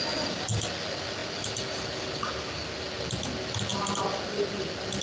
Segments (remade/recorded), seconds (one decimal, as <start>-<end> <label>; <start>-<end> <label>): 0.0-5.0 recorded